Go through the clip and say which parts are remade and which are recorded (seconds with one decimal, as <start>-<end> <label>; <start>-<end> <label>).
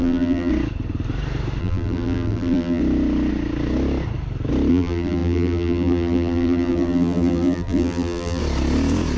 0.0-0.5 remade; 0.5-1.6 recorded; 1.6-2.8 remade; 2.8-4.7 recorded; 4.7-8.4 remade; 8.4-9.2 recorded